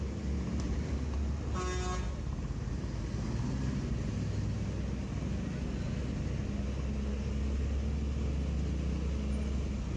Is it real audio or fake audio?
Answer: real